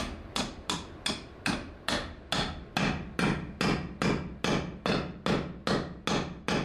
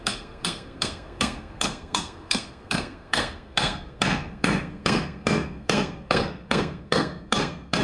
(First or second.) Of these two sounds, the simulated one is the second